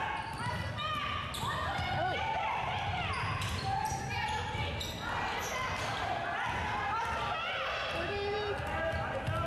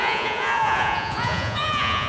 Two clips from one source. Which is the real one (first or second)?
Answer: first